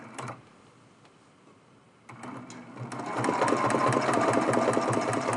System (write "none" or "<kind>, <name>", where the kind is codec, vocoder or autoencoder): none